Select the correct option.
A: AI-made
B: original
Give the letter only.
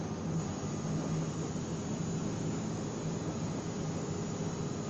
B